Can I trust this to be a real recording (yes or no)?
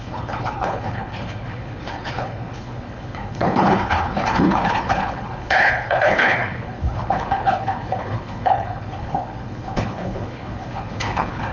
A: no